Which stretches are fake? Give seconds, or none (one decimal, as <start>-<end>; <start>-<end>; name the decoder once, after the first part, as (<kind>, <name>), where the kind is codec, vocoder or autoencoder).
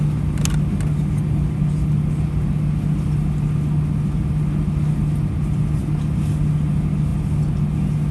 none